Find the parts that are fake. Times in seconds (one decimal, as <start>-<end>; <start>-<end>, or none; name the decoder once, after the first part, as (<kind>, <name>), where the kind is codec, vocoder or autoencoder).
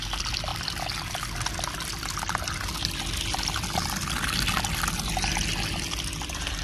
none